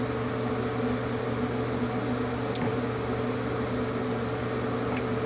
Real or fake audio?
real